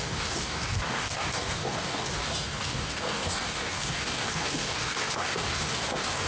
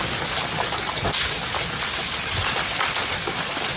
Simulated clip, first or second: first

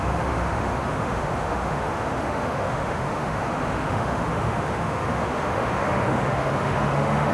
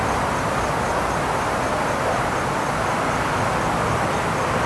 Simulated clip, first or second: first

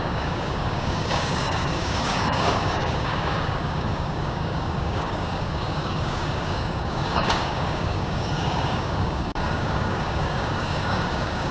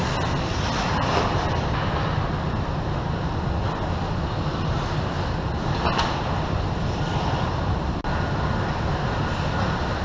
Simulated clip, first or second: first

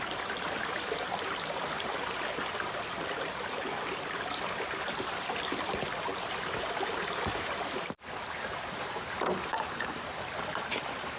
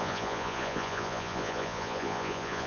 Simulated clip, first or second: second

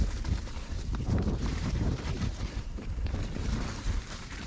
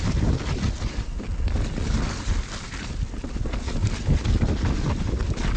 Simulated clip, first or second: first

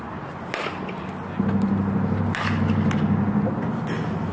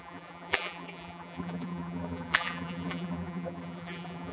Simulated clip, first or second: second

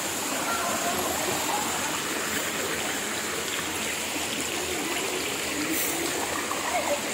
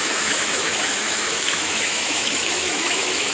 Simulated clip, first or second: second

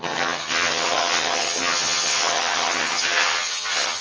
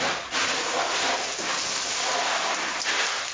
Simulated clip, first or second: first